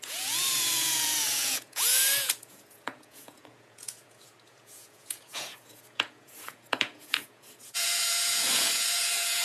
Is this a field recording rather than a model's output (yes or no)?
no